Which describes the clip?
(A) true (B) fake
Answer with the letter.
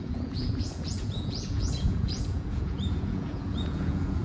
B